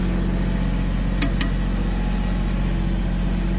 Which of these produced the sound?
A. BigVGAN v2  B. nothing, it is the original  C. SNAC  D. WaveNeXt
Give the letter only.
B